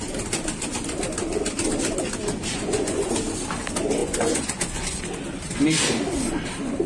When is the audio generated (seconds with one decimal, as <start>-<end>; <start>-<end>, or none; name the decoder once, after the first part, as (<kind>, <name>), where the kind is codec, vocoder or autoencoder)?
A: 2.5-3.1 (vocoder, Vocos); 4.0-5.0